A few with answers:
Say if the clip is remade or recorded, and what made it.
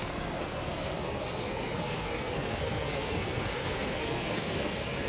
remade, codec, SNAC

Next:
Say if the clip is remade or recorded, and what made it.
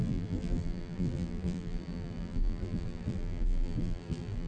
remade, vocoder, BigVGAN v2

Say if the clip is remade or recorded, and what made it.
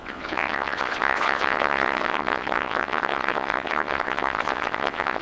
remade, vocoder, WaveNeXt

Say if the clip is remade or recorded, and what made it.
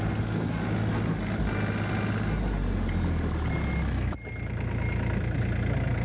recorded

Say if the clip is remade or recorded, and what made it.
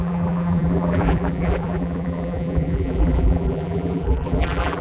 remade, vocoder, BigVGAN v2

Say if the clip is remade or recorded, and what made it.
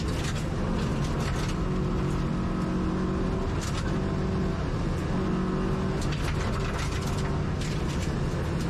recorded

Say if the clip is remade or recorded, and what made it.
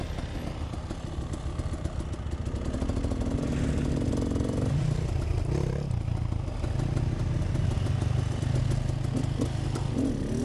recorded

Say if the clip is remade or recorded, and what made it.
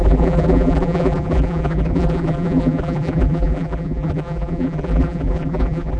remade, vocoder, BigVGAN v2